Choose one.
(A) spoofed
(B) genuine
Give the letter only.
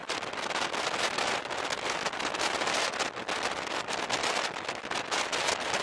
B